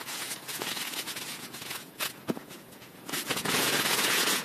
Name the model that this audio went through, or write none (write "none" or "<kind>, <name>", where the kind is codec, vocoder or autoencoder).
vocoder, Vocos